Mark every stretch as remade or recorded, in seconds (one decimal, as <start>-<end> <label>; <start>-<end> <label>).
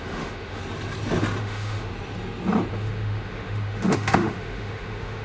0.0-0.6 remade; 0.6-1.4 recorded; 1.4-1.9 remade; 1.9-2.7 recorded; 2.7-5.2 remade